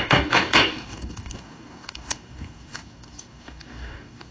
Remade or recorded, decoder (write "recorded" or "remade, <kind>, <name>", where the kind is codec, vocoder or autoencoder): remade, codec, DAC